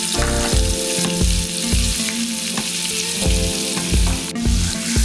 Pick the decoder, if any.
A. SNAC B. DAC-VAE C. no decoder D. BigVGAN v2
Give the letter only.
C